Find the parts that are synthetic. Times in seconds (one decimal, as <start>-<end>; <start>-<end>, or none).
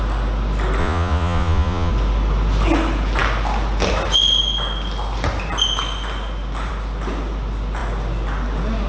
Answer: 0.8-1.9